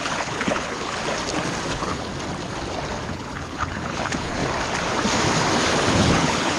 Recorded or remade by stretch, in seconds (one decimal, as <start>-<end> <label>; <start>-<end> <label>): 0.0-1.0 remade; 1.0-1.7 recorded; 1.7-2.1 remade; 2.1-3.1 recorded; 3.1-4.4 remade; 4.4-5.9 recorded; 5.9-6.6 remade